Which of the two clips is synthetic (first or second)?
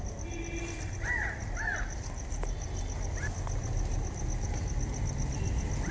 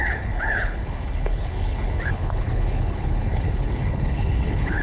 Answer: second